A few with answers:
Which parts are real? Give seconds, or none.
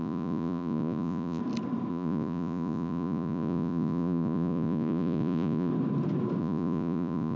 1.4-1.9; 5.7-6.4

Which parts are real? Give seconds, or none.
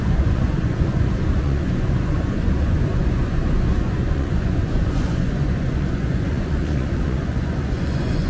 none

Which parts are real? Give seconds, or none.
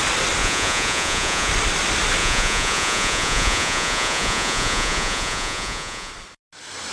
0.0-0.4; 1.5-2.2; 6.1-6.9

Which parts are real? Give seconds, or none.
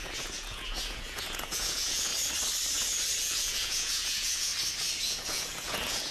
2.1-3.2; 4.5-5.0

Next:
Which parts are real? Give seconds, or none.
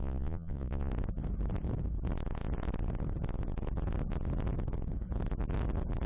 0.9-6.1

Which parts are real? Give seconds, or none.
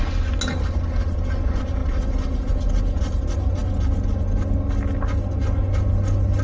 0.0-6.4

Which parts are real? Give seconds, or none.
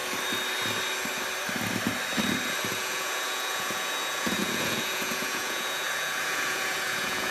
0.0-2.7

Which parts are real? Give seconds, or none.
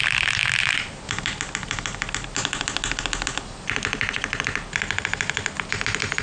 0.0-6.2